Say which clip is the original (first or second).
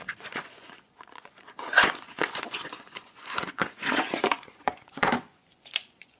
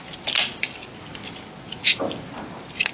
second